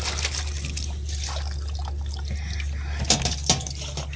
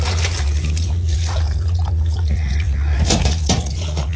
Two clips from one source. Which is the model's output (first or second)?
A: second